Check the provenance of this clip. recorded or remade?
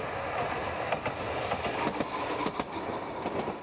recorded